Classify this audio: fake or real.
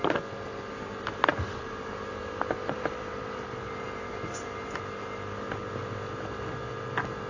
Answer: real